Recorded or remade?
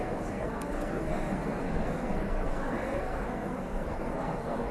remade